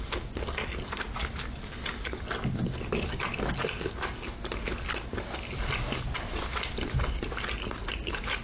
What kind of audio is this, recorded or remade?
recorded